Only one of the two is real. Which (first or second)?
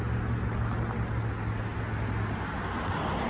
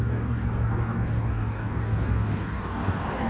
first